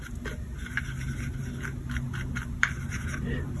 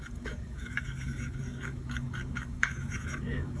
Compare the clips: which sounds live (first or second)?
first